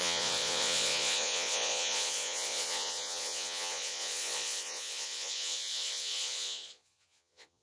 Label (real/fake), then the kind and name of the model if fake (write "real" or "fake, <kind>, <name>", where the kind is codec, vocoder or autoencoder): fake, vocoder, Vocos